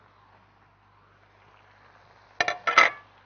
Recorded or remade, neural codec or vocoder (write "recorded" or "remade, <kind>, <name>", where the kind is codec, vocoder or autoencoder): recorded